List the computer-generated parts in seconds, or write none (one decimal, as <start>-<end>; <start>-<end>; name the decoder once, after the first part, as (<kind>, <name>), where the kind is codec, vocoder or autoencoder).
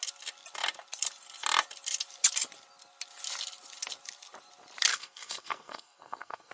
4.9-6.5 (codec, SNAC)